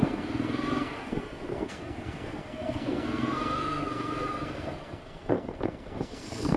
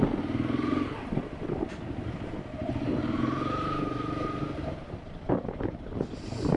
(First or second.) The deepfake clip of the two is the first